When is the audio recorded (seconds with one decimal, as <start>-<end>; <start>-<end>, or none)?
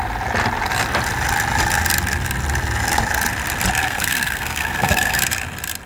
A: 0.0-3.8; 5.2-5.9